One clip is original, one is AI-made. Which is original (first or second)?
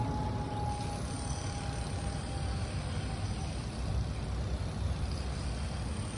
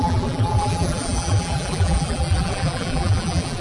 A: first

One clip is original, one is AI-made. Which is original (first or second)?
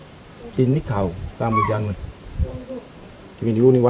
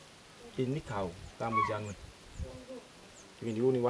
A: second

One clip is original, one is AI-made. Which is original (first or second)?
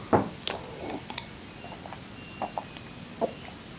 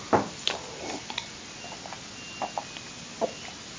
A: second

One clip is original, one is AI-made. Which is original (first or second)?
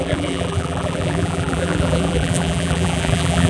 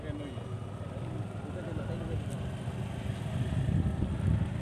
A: second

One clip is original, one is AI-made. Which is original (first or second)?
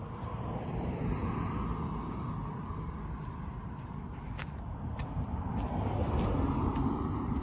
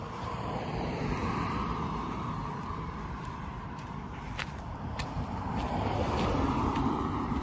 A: first